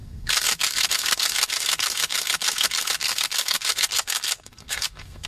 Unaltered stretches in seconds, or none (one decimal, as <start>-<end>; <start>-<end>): none